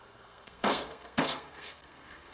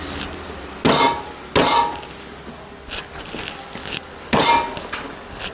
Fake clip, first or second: first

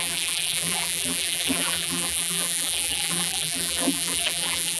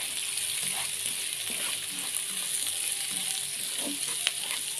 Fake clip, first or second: first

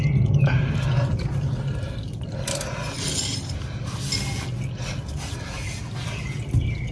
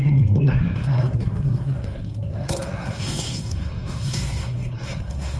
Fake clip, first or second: second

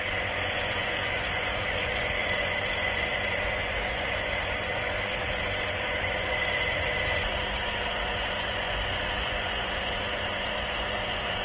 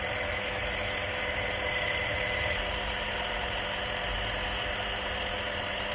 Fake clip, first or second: first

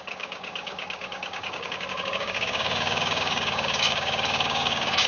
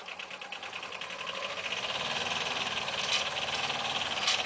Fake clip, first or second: first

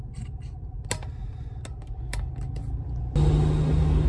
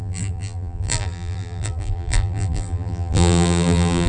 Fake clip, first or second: second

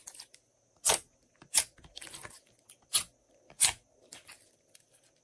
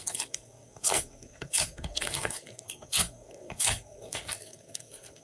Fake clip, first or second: second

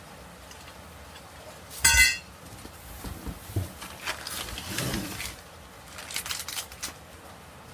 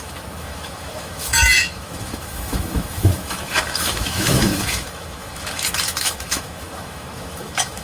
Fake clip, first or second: second